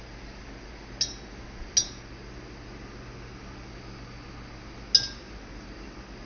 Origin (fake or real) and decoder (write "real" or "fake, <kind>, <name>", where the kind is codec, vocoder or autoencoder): real